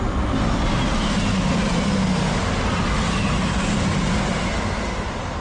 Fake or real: real